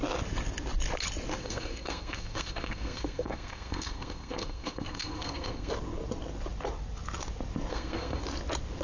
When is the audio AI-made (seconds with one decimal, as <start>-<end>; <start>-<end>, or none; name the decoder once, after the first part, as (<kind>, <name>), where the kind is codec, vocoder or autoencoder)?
1.4-5.7 (codec, SNAC); 7.7-8.2

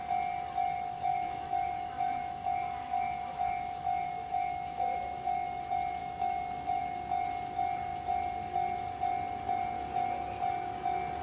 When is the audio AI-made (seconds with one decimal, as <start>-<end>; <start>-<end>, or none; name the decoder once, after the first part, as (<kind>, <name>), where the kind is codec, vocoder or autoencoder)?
1.1-5.6 (autoencoder, DAC-VAE); 6.0-6.8